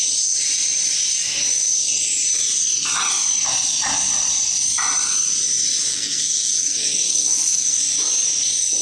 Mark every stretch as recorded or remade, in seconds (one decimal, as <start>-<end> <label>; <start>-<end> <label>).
0.0-5.9 recorded; 5.9-7.8 remade; 7.8-8.8 recorded